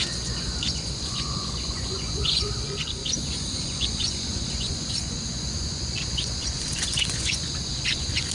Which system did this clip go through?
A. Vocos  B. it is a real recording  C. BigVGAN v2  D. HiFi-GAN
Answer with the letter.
A